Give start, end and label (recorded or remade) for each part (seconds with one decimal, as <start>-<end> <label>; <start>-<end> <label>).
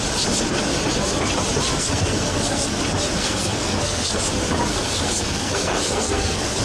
0.0-1.7 recorded; 1.7-2.8 remade; 2.8-3.2 recorded; 3.2-4.2 remade; 4.2-4.7 recorded; 4.7-6.6 remade